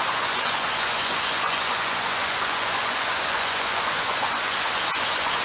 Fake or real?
fake